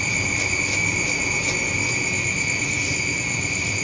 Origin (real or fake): real